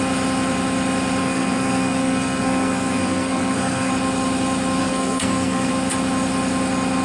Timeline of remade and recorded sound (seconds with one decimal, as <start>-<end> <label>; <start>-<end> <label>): 0.0-1.2 recorded; 1.2-3.9 remade; 3.9-4.8 recorded; 4.8-5.7 remade; 5.7-7.0 recorded